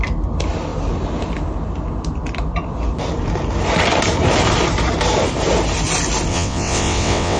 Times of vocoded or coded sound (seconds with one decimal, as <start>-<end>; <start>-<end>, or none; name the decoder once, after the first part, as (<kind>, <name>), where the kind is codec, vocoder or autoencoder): 6.3-7.4 (vocoder, WaveNeXt)